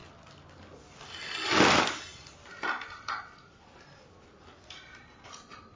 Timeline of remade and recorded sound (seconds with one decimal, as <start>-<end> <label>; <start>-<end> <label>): 0.0-5.8 recorded